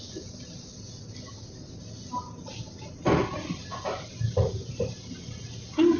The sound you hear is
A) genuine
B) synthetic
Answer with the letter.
A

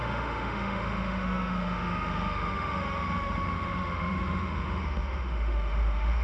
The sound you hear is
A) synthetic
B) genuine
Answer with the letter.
A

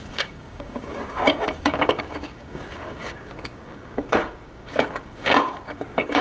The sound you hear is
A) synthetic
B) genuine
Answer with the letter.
A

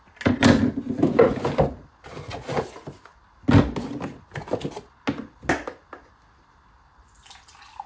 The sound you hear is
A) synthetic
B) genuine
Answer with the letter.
B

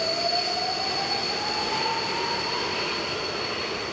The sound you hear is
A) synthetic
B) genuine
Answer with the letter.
B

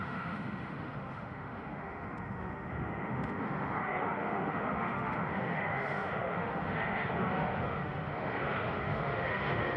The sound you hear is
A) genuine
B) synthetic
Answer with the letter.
B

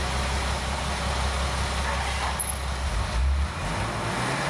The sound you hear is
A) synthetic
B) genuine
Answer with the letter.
B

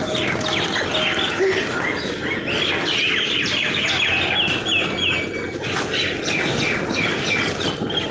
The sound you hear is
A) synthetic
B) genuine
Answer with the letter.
B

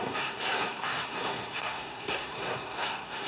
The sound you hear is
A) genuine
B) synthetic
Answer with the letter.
B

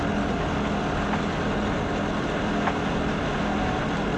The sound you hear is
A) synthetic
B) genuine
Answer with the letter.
B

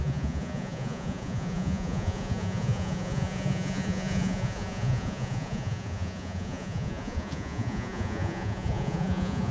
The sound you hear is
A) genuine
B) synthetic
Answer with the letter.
B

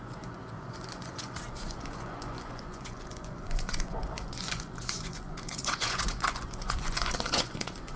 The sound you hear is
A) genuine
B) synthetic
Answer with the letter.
B